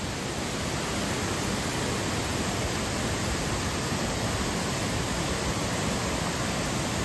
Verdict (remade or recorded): recorded